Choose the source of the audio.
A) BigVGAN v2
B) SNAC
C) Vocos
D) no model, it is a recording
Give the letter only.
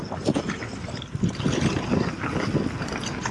D